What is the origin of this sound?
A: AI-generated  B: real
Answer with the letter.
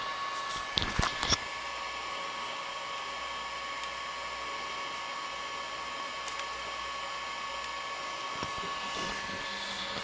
B